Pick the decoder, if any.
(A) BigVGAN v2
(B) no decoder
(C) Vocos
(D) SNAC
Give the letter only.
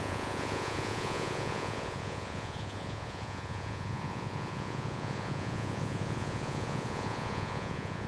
C